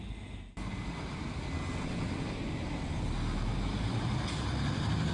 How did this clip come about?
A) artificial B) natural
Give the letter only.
B